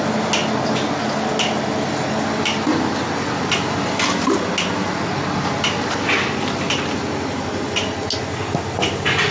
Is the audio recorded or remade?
recorded